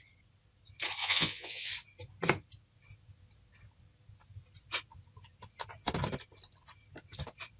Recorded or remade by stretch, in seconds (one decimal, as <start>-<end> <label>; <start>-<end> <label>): 0.0-1.0 recorded; 1.0-1.7 remade; 1.7-7.6 recorded